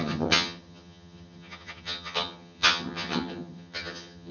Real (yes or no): no